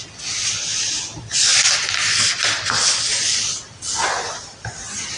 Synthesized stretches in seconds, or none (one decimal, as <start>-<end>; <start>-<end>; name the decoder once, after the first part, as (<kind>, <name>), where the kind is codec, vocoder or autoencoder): none